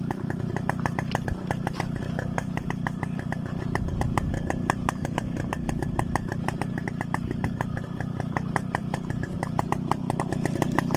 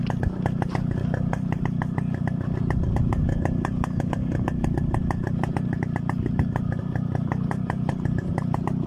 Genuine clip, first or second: second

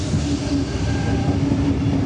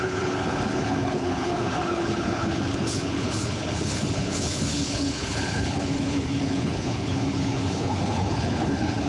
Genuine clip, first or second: first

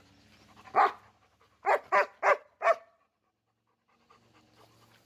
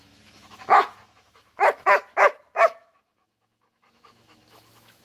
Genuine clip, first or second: first